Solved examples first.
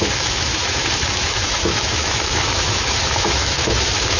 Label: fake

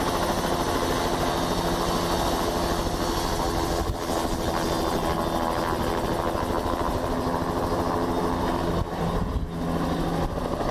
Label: real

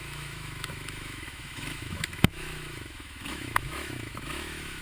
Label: fake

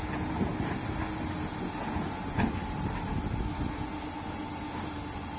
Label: real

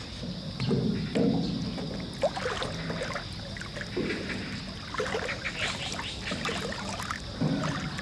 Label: real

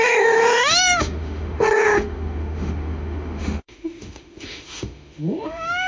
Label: fake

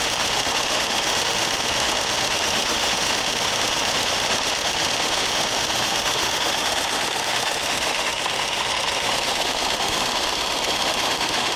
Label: fake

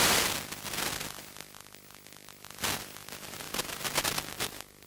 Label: real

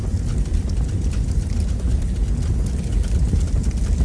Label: real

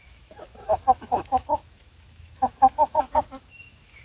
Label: fake